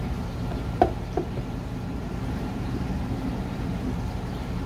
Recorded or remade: remade